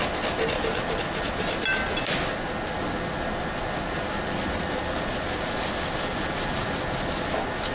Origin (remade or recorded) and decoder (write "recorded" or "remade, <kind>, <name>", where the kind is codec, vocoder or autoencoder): recorded